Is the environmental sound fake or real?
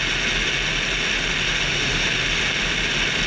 real